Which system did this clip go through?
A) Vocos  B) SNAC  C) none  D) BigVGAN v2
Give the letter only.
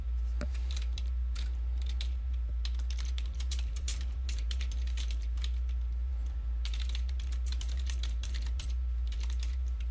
D